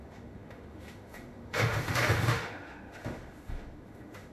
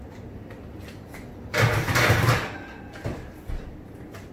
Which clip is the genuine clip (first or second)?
second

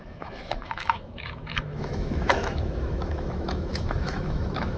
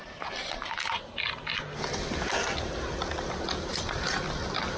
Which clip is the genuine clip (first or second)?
second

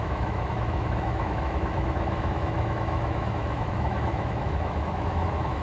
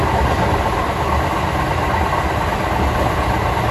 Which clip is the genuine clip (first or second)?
second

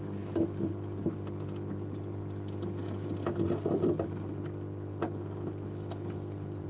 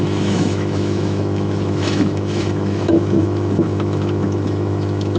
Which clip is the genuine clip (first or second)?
first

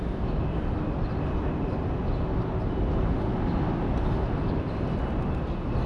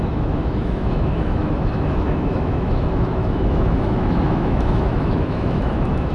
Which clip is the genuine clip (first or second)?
first